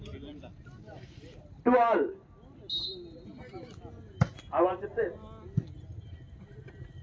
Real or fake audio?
real